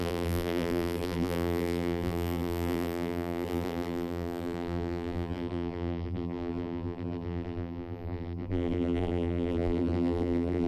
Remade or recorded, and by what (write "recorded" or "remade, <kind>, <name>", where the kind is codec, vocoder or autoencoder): remade, vocoder, BigVGAN v2